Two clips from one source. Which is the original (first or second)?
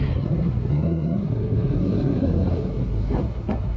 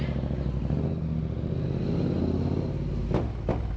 second